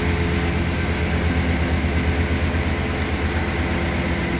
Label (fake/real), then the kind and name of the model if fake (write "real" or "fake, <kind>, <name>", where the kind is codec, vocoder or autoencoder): real